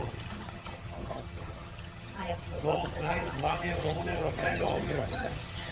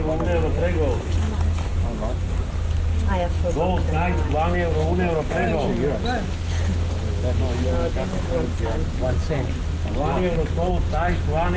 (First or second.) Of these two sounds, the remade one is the first